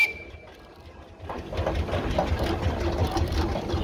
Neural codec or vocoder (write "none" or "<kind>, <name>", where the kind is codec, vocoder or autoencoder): none